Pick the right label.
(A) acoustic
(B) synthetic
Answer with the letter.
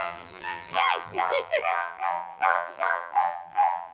B